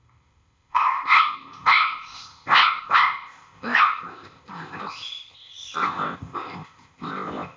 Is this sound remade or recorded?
remade